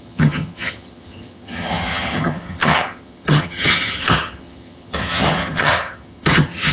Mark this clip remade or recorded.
remade